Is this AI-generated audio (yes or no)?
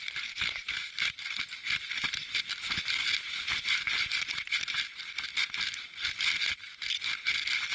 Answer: no